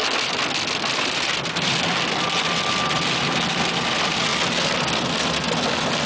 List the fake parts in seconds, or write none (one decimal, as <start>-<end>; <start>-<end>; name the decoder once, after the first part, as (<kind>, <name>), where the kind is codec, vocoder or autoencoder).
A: none